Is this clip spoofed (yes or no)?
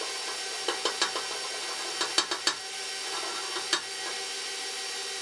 no